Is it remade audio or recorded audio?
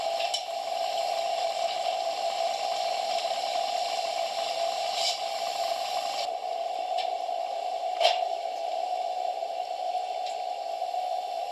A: recorded